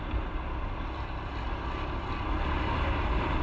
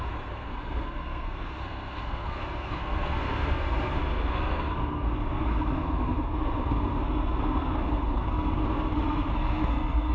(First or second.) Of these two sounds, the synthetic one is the second